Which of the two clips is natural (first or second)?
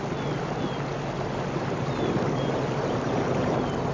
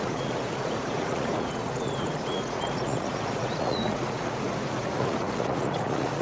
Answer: first